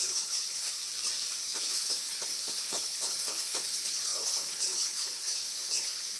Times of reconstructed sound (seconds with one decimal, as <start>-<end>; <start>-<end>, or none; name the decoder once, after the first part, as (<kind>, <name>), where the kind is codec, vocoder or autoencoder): 0.0-0.8 (codec, HILCodec); 1.4-6.2